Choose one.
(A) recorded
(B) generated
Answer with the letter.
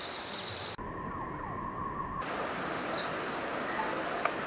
A